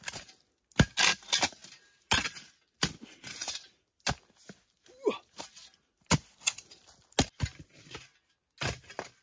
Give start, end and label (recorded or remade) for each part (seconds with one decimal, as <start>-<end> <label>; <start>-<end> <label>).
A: 0.0-9.2 recorded